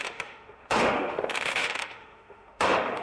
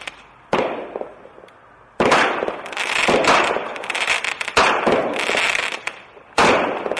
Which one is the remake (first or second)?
first